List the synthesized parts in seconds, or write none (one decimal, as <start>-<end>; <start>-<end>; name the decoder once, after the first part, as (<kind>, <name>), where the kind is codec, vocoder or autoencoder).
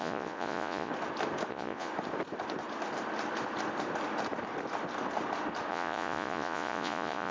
0.0-0.9 (vocoder, Vocos); 1.5-1.9; 5.7-7.3